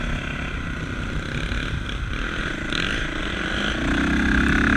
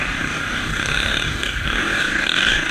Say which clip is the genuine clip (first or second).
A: first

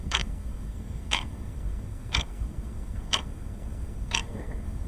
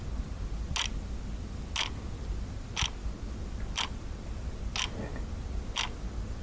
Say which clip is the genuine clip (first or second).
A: second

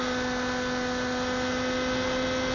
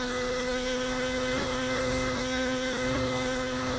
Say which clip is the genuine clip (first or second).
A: first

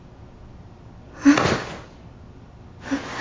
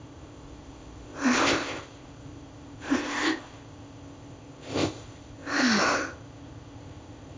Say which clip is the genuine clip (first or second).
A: first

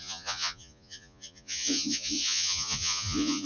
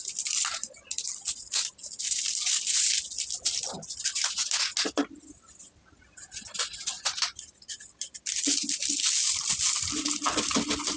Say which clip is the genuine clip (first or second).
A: second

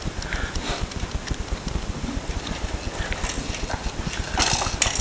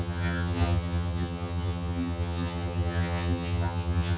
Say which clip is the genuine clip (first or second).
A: first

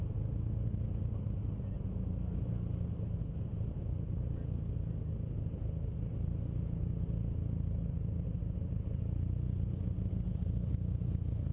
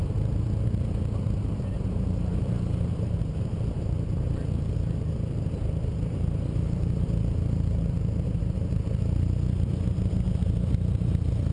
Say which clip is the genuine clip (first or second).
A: first